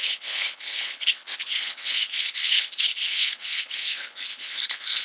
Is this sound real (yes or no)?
no